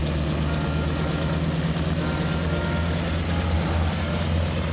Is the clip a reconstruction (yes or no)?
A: no